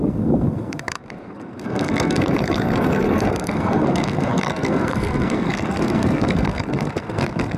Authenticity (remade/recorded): remade